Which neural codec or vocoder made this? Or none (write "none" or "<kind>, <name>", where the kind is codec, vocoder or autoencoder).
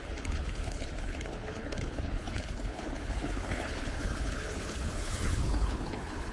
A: codec, HILCodec